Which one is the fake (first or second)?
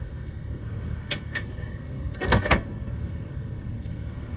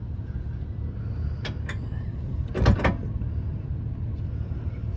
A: first